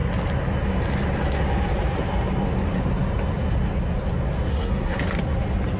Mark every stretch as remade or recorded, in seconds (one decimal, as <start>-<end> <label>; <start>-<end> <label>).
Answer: 0.0-4.5 recorded; 4.5-5.0 remade; 5.0-5.8 recorded